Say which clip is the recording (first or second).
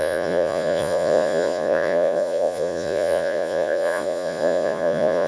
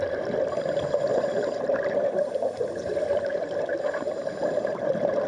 second